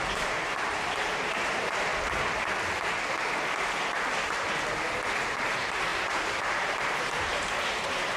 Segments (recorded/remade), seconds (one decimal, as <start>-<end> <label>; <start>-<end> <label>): 0.0-1.9 remade; 1.9-5.3 recorded; 5.3-8.2 remade